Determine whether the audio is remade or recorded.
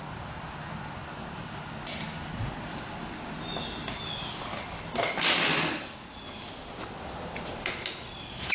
recorded